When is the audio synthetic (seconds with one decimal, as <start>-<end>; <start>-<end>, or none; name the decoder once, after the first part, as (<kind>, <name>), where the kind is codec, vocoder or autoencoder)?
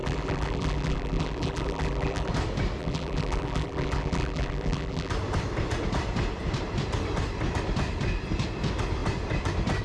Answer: 0.0-2.3 (vocoder, BigVGAN v2); 2.8-5.1